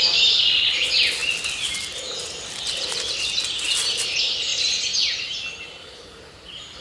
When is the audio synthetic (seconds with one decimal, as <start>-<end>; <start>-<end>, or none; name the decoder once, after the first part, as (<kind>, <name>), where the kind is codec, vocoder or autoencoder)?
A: none